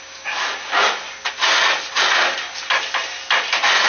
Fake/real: real